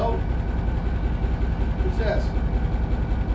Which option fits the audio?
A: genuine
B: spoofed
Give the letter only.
A